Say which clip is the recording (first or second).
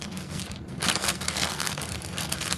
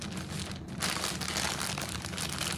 second